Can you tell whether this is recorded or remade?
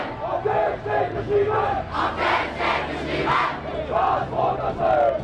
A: recorded